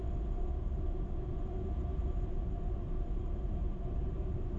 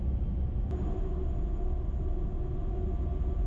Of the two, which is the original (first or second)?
second